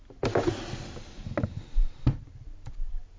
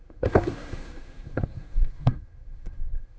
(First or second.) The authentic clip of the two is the first